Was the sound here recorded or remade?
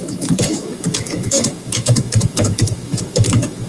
remade